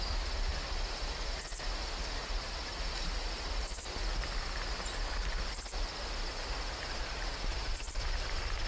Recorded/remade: recorded